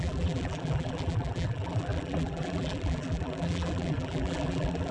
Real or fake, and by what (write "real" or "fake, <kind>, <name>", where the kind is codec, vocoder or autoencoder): fake, vocoder, BigVGAN v2